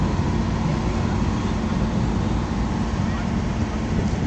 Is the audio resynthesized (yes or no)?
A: no